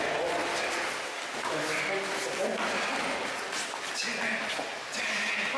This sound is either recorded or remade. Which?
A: recorded